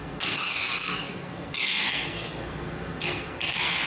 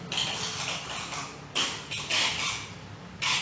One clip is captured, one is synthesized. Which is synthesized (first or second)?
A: first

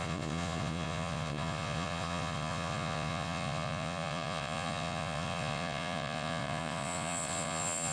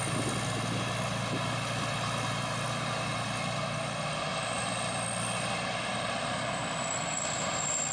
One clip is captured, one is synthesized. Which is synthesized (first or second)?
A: first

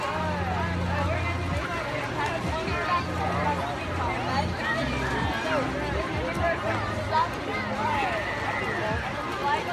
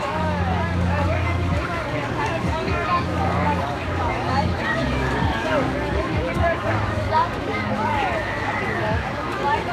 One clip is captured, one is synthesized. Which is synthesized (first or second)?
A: second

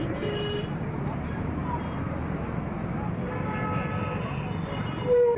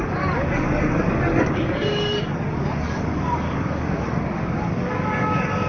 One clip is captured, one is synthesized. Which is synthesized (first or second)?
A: second